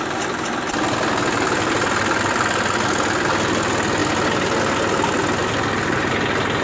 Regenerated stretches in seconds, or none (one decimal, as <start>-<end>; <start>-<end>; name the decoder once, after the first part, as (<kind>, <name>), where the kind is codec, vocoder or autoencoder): 5.4-6.1 (vocoder, BigVGAN v2)